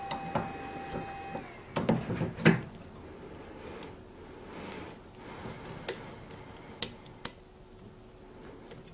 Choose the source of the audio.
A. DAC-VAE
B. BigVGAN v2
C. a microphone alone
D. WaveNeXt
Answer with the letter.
C